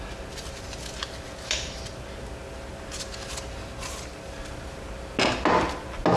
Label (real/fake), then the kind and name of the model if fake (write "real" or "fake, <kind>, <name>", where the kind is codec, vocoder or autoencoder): real